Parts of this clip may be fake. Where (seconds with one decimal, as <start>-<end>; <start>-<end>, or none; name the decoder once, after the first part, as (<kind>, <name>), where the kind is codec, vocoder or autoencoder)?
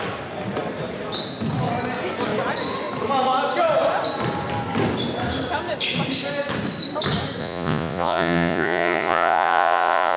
7.4-10.2 (vocoder, Vocos)